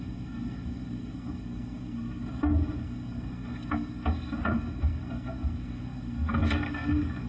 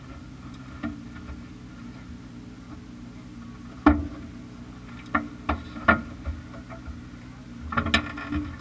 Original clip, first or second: second